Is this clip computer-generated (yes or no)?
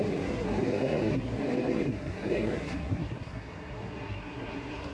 yes